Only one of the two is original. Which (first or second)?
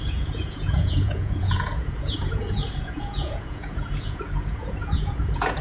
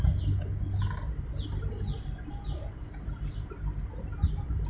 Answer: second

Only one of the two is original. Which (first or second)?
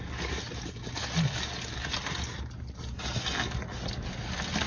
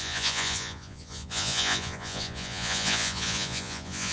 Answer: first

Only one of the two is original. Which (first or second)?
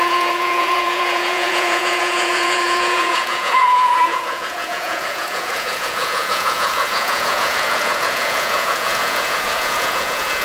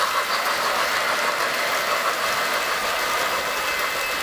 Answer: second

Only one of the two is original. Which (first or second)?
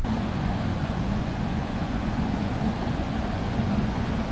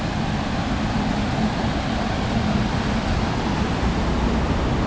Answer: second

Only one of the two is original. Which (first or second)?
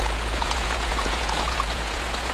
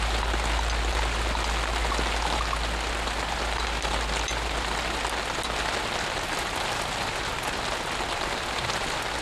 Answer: second